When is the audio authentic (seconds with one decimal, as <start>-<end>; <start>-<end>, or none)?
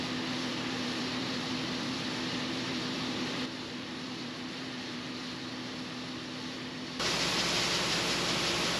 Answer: 0.0-0.5; 5.5-8.8